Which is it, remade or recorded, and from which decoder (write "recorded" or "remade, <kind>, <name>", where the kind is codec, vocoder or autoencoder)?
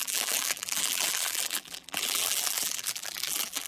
remade, vocoder, BigVGAN v2